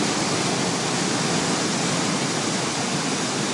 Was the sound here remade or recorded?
recorded